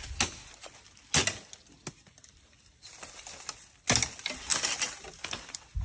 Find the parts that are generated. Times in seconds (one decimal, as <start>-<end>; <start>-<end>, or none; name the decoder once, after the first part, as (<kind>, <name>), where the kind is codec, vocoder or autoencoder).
none